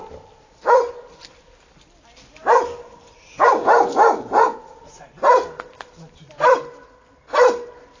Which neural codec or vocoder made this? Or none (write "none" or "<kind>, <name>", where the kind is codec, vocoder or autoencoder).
none